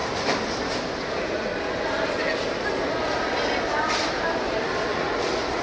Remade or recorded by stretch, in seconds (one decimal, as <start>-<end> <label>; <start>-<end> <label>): 0.0-1.0 recorded; 1.0-1.5 remade; 1.5-4.9 recorded; 4.9-5.6 remade